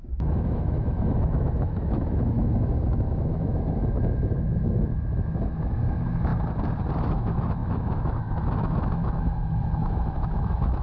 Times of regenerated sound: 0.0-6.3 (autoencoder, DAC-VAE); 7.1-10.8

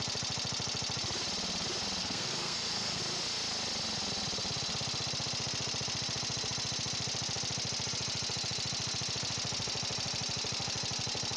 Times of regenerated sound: 2.0-3.0 (codec, SNAC)

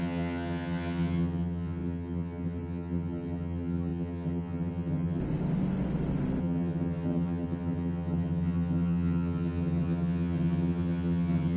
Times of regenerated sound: 0.0-5.2 (vocoder, HiFi-GAN); 6.4-11.6